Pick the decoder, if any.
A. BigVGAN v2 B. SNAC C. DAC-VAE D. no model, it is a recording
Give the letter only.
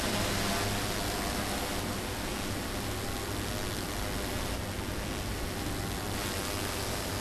D